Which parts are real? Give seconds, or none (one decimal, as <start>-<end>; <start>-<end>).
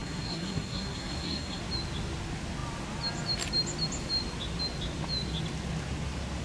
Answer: 1.6-6.4